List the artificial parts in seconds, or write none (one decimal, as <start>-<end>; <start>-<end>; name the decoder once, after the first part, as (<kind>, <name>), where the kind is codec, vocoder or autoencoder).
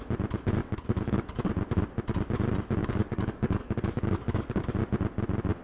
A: 0.6-1.5 (codec, DAC); 2.8-4.6